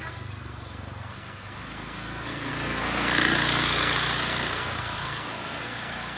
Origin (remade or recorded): remade